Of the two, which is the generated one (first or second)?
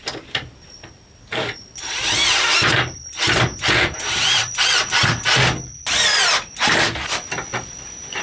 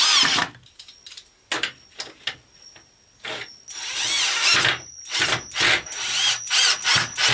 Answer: first